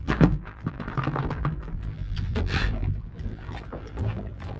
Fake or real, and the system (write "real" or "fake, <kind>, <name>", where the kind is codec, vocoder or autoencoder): fake, vocoder, BigVGAN v2